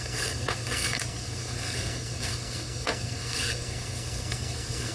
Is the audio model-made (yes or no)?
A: yes